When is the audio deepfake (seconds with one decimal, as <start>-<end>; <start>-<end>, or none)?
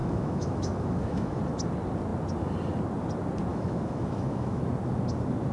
0.0-1.4; 3.5-4.6